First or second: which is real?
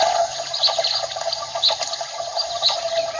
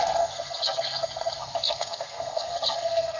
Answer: first